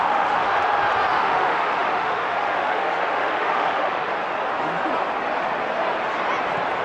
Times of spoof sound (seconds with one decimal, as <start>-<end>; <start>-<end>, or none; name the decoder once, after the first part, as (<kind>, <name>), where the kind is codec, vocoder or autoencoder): 0.0-0.5 (autoencoder, DAC-VAE); 1.1-4.1